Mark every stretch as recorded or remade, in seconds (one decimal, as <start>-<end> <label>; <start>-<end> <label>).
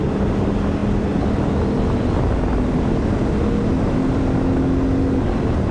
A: 0.0-5.7 recorded